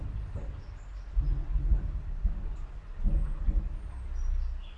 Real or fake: real